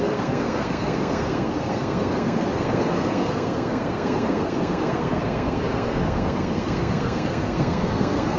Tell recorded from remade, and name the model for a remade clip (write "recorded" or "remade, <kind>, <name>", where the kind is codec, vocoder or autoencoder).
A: remade, codec, SNAC